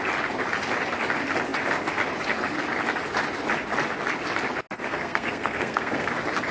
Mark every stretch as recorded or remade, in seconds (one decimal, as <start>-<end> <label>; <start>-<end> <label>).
0.0-4.8 recorded; 4.8-6.1 remade; 6.1-6.5 recorded